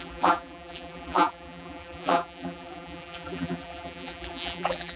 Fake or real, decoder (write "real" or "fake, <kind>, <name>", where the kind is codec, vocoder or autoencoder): fake, vocoder, BigVGAN v2